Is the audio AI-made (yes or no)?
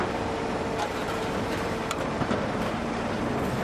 yes